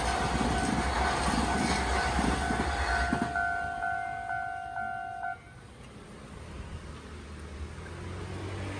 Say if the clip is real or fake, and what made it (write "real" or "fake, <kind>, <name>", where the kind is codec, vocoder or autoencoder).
real